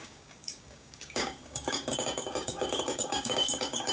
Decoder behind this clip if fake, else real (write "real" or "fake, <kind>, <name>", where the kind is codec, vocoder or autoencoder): fake, codec, DAC